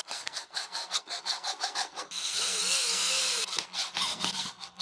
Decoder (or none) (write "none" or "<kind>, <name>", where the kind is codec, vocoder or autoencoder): codec, SNAC